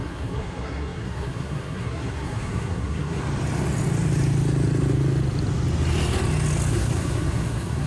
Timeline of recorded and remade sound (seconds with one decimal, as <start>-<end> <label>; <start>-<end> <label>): 0.0-3.2 remade; 3.2-6.7 recorded; 6.7-7.9 remade